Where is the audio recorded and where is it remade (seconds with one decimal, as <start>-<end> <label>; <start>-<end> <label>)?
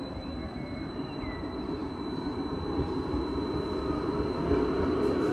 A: 0.0-5.3 recorded